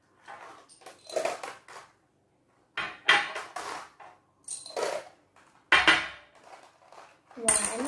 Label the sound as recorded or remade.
recorded